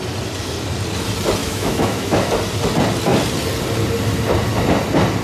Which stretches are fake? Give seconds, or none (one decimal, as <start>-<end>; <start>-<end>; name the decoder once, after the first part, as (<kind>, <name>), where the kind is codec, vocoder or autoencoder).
1.4-2.3 (autoencoder, DAC-VAE)